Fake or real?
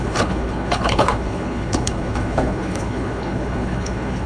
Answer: fake